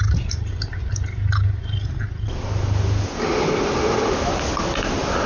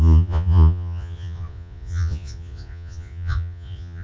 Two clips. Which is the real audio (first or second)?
first